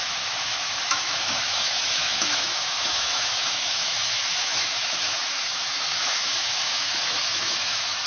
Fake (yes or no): yes